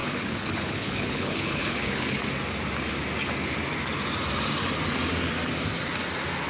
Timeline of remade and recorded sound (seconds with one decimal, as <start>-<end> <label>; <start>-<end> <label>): 0.0-2.2 remade; 2.2-6.5 recorded